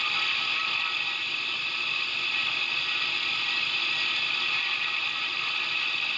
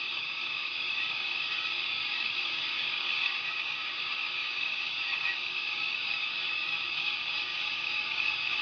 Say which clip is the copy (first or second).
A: second